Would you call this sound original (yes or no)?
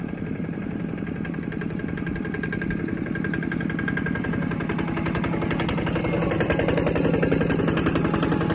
yes